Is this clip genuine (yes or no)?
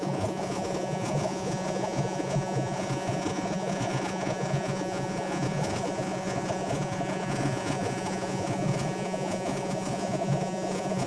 no